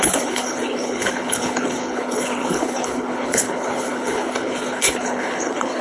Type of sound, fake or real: fake